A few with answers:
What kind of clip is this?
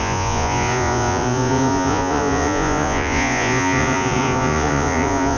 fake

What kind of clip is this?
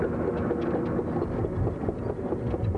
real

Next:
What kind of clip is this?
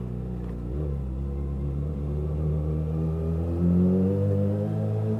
real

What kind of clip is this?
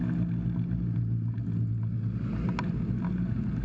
real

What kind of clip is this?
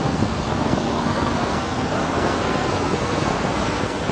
fake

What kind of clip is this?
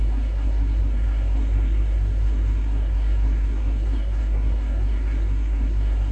fake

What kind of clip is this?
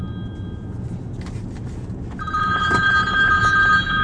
real